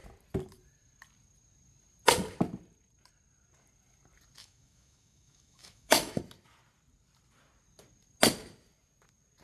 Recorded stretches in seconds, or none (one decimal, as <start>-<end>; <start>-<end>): 0.0-4.4; 6.2-9.4